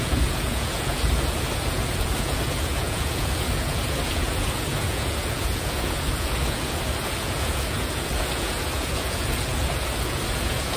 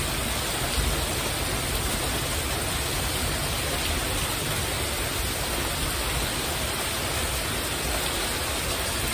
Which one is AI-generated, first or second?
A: first